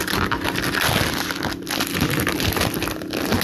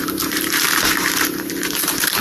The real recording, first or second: first